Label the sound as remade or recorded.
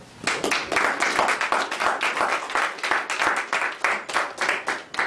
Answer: recorded